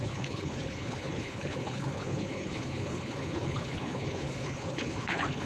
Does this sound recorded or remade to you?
remade